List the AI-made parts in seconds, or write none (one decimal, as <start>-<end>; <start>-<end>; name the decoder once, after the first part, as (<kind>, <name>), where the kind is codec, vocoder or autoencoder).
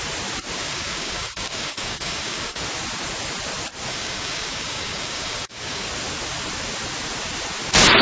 0.6-2.6 (codec, DAC); 3.9-5.9